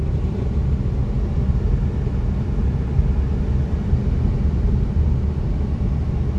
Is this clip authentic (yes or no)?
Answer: yes